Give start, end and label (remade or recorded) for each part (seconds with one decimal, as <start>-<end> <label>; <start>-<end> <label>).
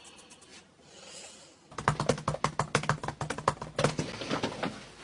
0.0-5.0 recorded